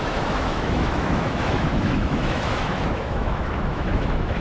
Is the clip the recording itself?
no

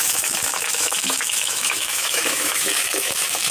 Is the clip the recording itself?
no